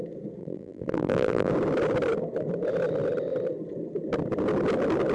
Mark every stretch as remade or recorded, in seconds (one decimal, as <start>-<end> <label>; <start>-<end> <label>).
0.0-0.4 recorded; 0.4-1.5 remade; 1.5-5.1 recorded